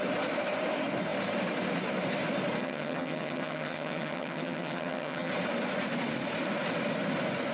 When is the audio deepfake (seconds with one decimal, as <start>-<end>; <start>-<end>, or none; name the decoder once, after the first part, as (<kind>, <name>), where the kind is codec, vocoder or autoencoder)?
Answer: 2.6-5.3 (vocoder, HiFi-GAN)